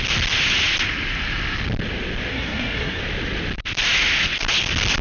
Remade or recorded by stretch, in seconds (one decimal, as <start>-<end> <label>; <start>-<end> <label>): 0.0-2.3 recorded; 2.3-3.0 remade; 3.0-5.0 recorded